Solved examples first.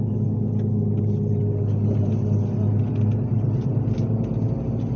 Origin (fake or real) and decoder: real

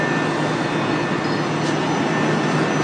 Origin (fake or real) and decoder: real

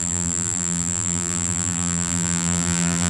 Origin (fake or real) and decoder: fake, vocoder, BigVGAN v2